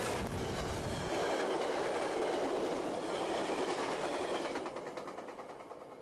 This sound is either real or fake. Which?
real